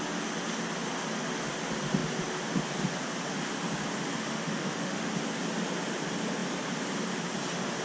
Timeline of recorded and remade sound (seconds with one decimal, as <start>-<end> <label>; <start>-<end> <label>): 0.0-4.3 recorded; 4.3-5.1 remade; 5.1-7.8 recorded